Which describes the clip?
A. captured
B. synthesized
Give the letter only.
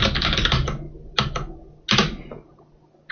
A